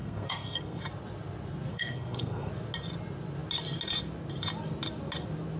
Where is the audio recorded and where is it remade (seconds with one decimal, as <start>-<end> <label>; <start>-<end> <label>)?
0.0-0.8 remade; 0.8-1.7 recorded; 1.7-2.5 remade; 2.5-5.6 recorded